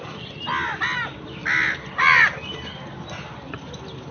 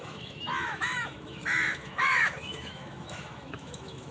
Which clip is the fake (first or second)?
second